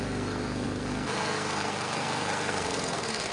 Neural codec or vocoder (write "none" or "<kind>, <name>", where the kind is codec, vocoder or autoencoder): codec, SNAC